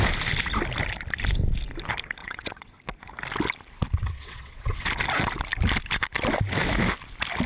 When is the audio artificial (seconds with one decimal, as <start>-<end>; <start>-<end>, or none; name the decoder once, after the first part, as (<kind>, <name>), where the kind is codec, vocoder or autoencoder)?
2.2-2.8 (vocoder, WaveNeXt); 4.0-4.9